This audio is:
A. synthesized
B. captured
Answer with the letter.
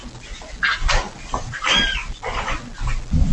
B